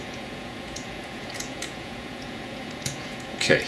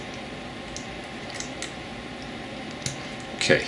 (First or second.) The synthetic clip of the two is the first